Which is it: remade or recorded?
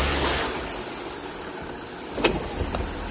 recorded